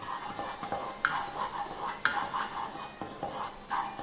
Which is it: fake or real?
real